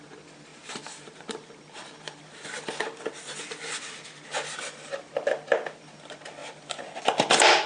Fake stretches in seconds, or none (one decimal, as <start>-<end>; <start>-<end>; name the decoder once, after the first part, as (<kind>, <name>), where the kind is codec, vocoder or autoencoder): 0.5-1.5 (vocoder, BigVGAN v2)